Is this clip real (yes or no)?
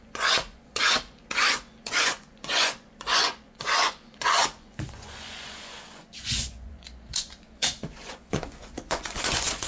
no